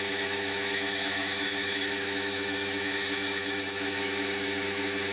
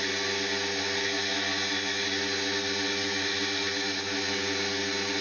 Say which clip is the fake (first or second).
first